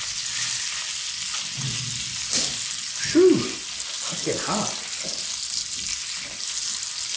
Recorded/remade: recorded